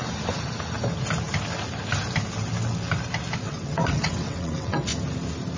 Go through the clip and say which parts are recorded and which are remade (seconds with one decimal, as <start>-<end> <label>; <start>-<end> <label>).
0.0-3.4 recorded; 3.4-4.9 remade; 4.9-5.6 recorded